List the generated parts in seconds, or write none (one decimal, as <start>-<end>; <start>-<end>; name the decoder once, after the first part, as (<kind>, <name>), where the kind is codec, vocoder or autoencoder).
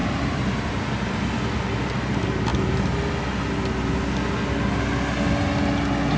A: 0.0-0.9 (vocoder, BigVGAN v2)